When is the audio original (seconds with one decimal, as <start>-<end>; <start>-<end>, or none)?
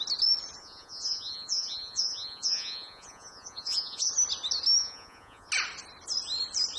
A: 0.0-0.6; 4.1-4.8; 5.5-6.8